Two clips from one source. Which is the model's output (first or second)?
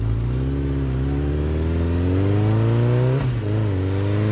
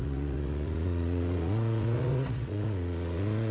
second